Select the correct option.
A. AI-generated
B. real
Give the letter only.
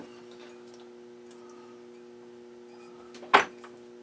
B